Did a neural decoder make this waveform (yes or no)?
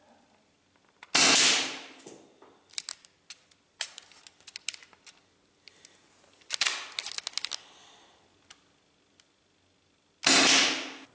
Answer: no